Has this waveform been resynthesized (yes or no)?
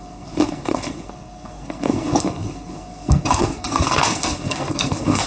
yes